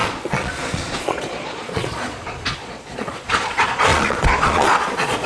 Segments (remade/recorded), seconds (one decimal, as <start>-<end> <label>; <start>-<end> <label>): 0.0-5.3 remade